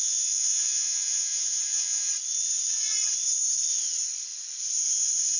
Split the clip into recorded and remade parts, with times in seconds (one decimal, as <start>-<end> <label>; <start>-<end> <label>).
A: 0.0-2.1 remade; 2.1-5.4 recorded